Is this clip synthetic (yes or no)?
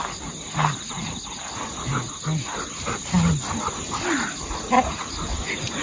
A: no